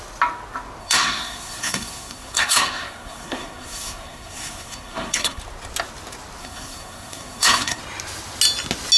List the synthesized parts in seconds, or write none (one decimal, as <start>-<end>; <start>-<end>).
0.8-5.4; 6.4-7.8